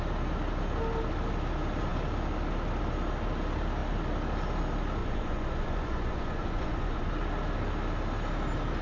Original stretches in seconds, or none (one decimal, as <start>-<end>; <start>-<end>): 0.0-5.0; 7.1-8.8